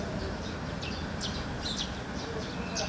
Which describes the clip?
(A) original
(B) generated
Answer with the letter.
A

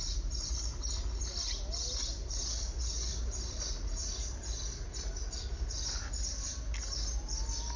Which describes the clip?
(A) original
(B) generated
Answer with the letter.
A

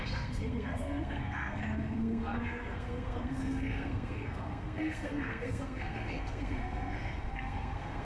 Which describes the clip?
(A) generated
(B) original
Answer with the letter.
A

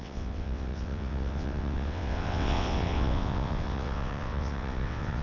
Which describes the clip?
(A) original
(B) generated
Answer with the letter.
B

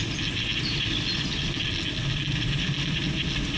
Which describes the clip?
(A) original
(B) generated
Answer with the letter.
A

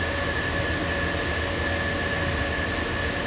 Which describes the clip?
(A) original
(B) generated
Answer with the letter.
A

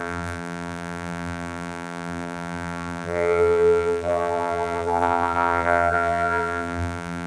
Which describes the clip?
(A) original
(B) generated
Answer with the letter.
B